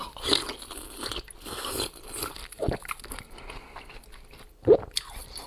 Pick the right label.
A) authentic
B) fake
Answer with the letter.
A